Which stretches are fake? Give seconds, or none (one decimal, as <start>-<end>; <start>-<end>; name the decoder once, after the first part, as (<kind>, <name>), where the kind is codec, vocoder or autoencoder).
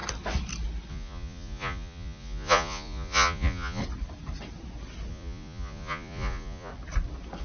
0.9-3.8 (vocoder, Vocos); 5.1-6.7